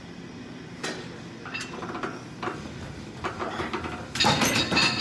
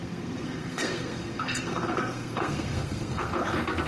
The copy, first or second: second